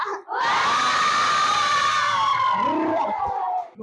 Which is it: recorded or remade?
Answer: recorded